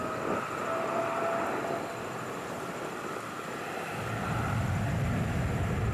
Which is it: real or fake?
real